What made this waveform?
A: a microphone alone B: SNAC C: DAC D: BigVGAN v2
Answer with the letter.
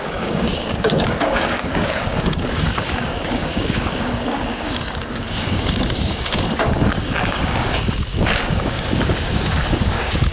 C